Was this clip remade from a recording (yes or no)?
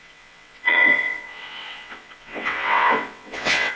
yes